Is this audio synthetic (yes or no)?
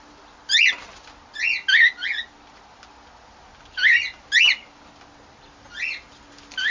no